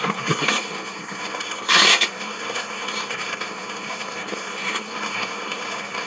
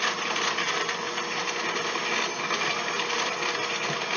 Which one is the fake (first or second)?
first